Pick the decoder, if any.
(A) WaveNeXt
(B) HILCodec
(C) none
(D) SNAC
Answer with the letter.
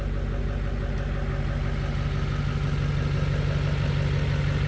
C